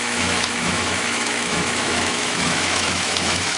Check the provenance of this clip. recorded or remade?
remade